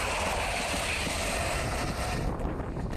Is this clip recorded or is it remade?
recorded